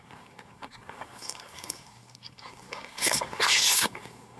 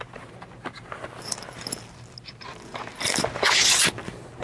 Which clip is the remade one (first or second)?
first